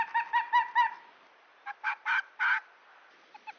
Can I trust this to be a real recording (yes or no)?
yes